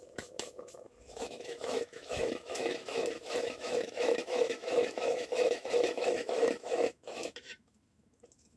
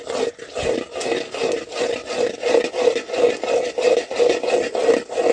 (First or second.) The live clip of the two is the second